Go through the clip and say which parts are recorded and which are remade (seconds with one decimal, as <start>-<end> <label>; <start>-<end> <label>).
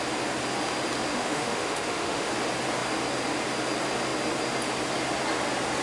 0.0-1.1 recorded; 1.1-2.3 remade; 2.3-5.8 recorded